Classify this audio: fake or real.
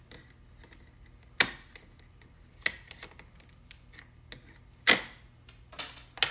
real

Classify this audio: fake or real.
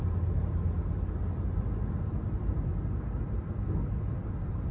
real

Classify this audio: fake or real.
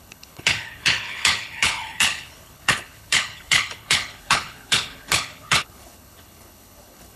fake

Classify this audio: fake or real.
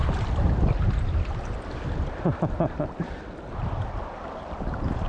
fake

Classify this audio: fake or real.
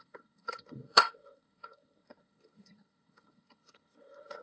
fake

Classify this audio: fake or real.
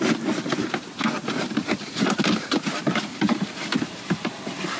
real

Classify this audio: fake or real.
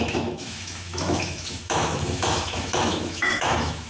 fake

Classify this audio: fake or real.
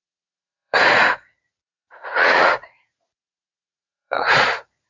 fake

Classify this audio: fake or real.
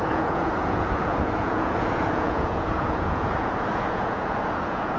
fake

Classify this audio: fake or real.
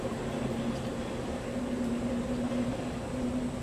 fake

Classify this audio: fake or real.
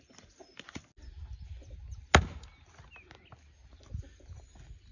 real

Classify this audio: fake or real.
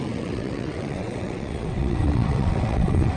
fake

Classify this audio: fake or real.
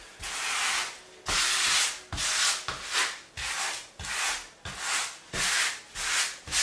real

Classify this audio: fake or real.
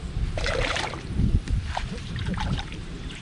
fake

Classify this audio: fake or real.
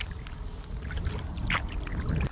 real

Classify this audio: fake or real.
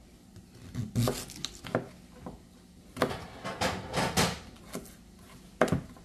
real